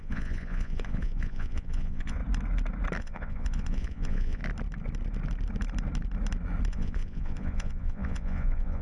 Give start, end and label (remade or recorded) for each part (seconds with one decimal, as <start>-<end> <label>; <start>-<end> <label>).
0.0-2.2 remade; 2.2-3.0 recorded; 3.0-4.4 remade; 4.4-6.7 recorded; 6.7-8.8 remade